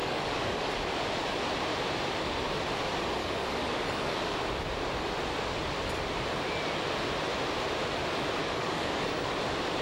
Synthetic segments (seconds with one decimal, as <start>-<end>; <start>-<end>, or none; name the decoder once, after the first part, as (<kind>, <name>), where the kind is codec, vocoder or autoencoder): 0.0-0.7 (codec, DAC); 3.2-4.3; 8.4-9.3